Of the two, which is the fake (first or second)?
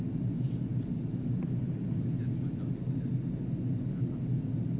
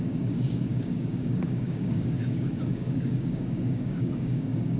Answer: second